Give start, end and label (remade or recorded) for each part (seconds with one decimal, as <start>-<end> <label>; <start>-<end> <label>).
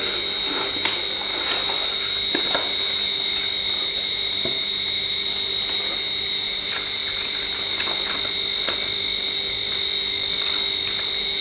0.0-11.4 recorded